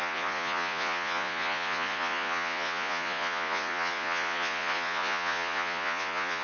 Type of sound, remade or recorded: remade